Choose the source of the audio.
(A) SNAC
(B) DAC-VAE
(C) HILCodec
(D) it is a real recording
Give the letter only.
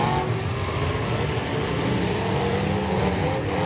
D